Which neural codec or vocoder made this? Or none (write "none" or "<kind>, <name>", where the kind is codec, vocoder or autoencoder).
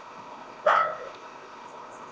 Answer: codec, ZipCodec